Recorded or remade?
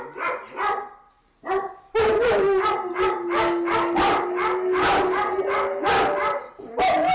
recorded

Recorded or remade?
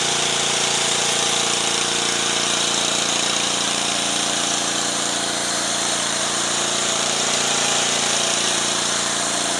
remade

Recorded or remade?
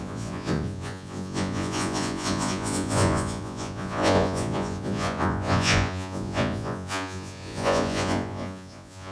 remade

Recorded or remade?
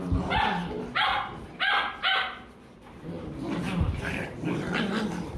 recorded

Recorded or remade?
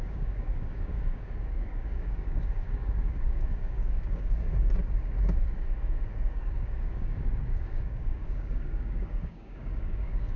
remade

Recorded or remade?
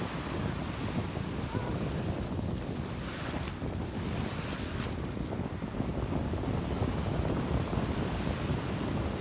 recorded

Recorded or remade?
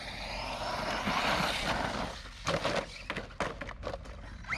recorded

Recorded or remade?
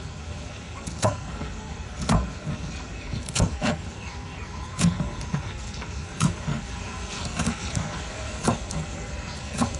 remade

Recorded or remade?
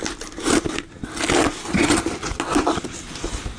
recorded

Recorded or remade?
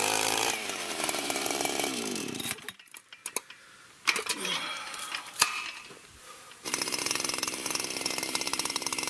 remade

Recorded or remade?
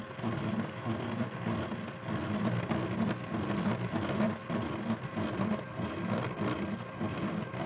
recorded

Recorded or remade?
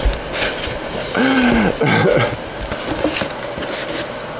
recorded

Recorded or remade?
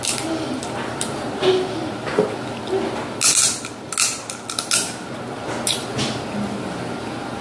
recorded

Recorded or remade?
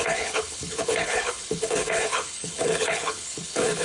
remade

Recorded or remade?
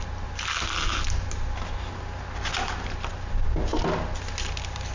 recorded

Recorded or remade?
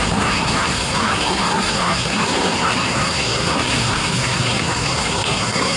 remade